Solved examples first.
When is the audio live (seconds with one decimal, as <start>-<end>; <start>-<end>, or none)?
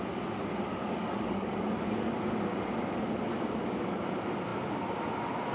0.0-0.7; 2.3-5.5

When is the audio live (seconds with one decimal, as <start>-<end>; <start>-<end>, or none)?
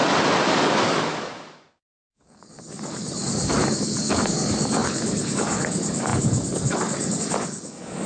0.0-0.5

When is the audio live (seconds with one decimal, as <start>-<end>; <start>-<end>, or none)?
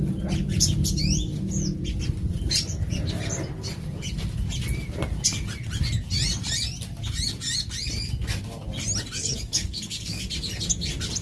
0.0-9.2; 10.3-11.2